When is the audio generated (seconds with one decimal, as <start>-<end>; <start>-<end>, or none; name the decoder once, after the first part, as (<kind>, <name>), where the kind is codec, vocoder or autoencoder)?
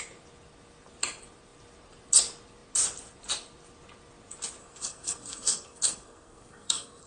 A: 4.6-7.1 (codec, SNAC)